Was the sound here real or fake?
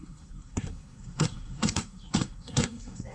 fake